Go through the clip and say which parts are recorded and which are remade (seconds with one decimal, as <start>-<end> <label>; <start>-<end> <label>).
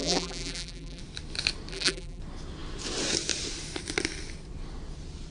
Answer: 0.0-1.0 remade; 1.0-1.7 recorded; 1.7-2.2 remade; 2.2-5.3 recorded